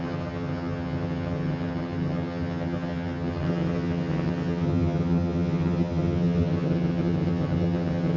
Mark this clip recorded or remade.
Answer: remade